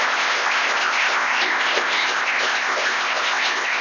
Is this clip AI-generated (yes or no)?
yes